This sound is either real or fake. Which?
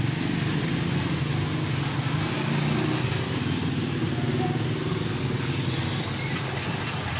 real